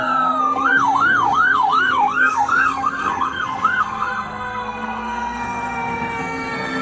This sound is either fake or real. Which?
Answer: fake